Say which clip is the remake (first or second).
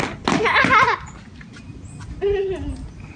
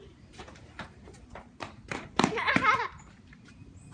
second